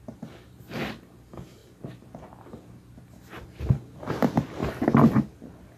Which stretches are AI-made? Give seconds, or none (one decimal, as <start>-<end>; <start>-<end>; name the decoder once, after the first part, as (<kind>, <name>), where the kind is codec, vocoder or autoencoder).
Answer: none